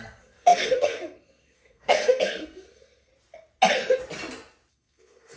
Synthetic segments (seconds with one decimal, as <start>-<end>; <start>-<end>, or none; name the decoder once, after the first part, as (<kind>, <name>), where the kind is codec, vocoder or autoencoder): 0.0-3.1 (codec, SNAC); 4.7-5.4